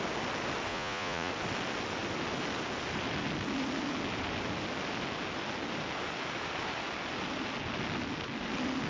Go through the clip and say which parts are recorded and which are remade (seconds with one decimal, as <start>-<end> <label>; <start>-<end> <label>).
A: 0.0-0.7 recorded; 0.7-1.3 remade; 1.3-8.9 recorded